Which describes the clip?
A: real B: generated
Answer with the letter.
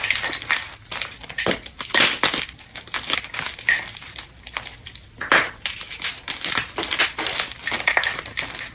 A